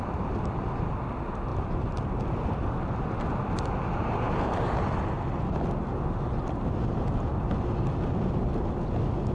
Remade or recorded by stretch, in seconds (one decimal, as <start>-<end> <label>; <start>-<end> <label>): 0.0-9.3 recorded